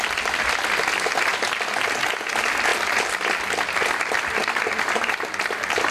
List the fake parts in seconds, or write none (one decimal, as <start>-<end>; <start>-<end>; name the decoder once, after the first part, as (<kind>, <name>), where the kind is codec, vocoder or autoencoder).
none